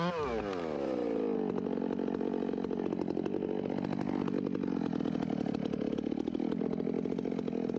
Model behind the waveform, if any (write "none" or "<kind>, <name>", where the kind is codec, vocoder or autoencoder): none